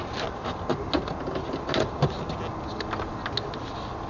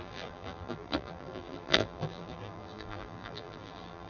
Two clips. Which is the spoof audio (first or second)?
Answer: second